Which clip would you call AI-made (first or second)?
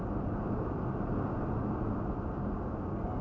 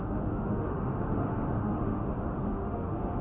second